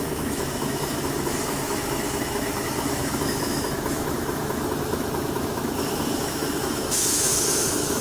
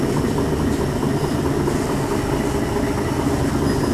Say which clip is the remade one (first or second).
first